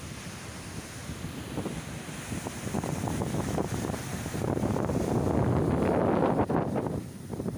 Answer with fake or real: real